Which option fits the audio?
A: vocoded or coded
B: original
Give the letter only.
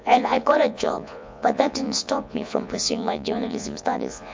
A